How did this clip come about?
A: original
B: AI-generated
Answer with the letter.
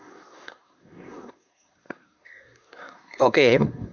B